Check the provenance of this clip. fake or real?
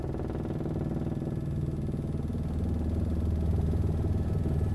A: real